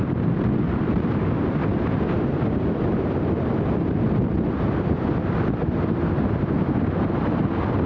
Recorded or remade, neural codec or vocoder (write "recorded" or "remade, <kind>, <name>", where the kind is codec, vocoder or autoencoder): recorded